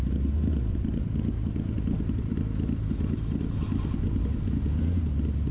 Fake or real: real